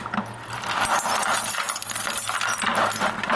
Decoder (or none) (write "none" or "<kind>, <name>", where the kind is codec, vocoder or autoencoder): none